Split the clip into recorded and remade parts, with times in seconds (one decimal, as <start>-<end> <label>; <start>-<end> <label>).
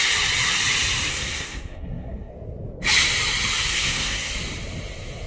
0.0-1.1 recorded; 1.1-2.3 remade; 2.3-3.7 recorded; 3.7-4.3 remade; 4.3-5.3 recorded